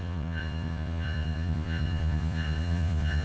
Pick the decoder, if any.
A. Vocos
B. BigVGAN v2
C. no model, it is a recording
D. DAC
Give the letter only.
A